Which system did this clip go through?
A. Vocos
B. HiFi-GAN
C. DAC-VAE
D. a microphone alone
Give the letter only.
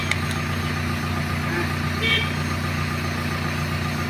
D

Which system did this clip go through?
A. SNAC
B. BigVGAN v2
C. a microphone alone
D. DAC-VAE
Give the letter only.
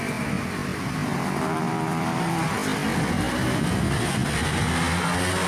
C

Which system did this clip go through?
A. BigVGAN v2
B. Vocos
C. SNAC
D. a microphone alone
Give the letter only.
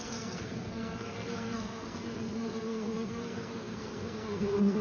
C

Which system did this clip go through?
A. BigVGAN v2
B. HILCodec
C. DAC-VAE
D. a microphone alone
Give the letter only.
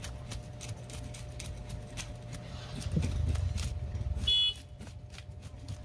D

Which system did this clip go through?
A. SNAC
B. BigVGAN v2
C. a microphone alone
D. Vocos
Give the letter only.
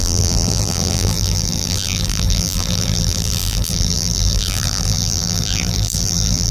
B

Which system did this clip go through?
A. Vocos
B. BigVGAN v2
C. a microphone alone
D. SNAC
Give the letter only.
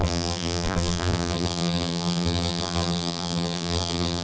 B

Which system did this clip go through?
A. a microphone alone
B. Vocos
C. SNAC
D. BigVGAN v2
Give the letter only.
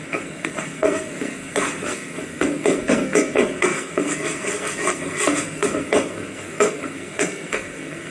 C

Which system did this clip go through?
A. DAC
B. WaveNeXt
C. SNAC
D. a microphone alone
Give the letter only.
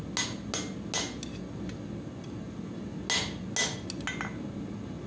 D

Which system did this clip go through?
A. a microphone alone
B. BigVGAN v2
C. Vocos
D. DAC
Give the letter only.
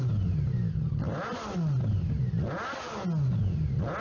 A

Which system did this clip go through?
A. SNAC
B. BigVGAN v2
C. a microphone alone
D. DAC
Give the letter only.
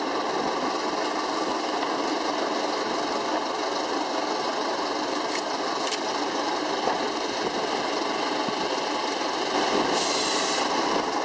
C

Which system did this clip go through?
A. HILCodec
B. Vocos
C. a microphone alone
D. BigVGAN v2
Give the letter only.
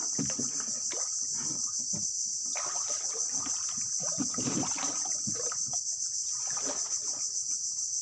C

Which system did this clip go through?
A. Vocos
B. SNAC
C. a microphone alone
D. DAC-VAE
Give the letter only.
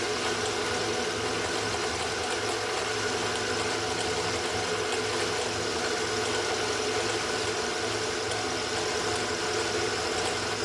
C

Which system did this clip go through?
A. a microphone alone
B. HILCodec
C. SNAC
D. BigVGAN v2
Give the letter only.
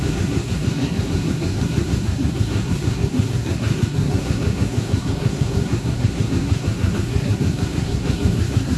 C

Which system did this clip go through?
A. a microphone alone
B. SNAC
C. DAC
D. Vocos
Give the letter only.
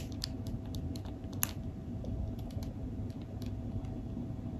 A